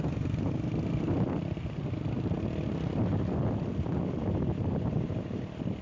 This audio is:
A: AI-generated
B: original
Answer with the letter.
B